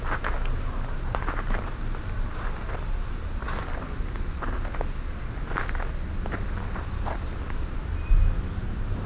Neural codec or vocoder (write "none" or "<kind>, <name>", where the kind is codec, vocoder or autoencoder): none